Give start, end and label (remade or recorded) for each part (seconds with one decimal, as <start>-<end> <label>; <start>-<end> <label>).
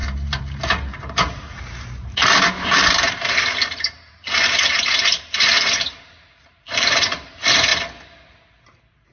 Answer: 0.0-7.7 remade; 7.7-8.5 recorded; 8.5-9.1 remade